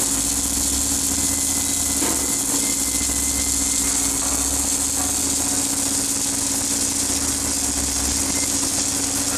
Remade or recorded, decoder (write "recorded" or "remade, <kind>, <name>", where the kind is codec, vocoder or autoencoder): recorded